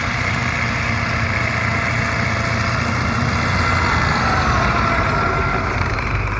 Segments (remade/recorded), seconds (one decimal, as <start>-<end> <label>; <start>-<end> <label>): 0.0-0.4 remade; 0.4-4.2 recorded; 4.2-6.4 remade